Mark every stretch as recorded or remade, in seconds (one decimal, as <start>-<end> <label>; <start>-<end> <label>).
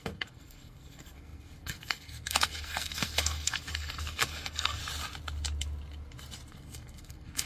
0.0-4.8 remade; 4.8-6.5 recorded; 6.5-7.5 remade